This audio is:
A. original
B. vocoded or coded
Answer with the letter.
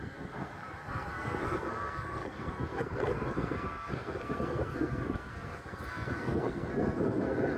B